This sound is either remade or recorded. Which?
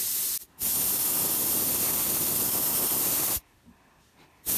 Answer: recorded